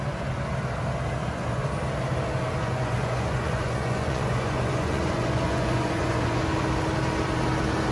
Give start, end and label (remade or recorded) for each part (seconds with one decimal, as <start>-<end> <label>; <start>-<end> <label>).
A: 0.0-1.2 recorded; 1.2-1.7 remade; 1.7-2.6 recorded; 2.6-6.4 remade; 6.4-7.9 recorded